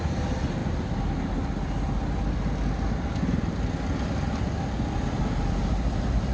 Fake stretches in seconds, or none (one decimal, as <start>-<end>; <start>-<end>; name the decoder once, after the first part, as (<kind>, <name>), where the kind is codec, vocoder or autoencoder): none